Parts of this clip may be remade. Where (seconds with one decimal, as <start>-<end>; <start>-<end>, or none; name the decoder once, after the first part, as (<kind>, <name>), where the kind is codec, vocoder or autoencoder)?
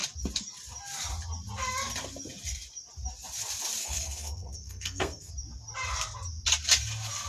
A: 3.8-5.3 (codec, SNAC)